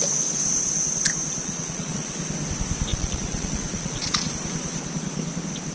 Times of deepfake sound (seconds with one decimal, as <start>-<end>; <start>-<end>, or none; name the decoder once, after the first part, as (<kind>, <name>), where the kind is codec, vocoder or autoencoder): 1.4-2.1 (vocoder, Vocos); 2.9-4.3

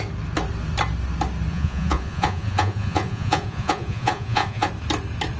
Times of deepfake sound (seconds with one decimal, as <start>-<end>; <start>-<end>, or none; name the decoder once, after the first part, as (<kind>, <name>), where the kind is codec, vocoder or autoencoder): 1.5-4.7 (vocoder, Vocos)

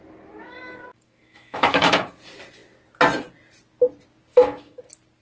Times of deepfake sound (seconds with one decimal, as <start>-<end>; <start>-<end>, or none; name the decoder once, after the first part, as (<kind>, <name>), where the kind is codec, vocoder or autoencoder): 0.9-2.1 (autoencoder, DAC-VAE); 4.3-4.8

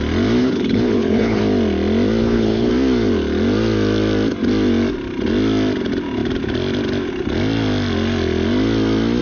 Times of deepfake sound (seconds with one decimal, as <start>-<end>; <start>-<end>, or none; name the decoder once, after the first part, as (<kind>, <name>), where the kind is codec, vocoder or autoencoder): 0.4-1.4 (codec, HILCodec); 2.2-2.7